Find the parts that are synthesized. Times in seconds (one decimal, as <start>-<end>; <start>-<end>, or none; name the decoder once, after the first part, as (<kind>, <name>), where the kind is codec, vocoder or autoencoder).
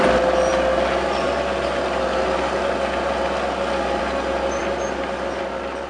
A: none